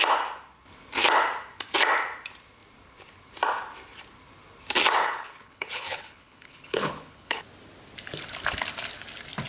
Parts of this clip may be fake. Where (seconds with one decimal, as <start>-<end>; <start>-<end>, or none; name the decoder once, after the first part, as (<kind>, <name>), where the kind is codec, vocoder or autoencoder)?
5.0-7.4 (codec, HILCodec)

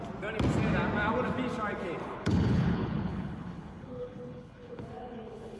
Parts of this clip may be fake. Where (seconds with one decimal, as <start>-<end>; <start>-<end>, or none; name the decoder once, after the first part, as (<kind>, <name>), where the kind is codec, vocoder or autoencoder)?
2.0-5.6 (codec, HILCodec)